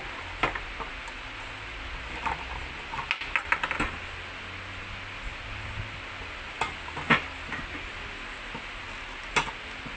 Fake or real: real